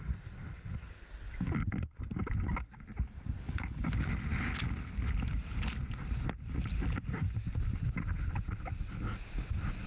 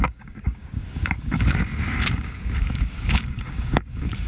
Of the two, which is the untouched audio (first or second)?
first